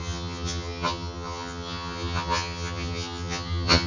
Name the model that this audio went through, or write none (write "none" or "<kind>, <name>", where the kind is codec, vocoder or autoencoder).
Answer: vocoder, HiFi-GAN